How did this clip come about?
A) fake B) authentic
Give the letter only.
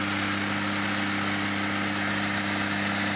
B